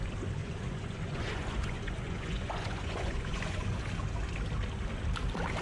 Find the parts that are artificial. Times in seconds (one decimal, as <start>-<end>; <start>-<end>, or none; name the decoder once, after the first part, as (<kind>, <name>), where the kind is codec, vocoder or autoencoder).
0.4-3.8 (vocoder, Vocos)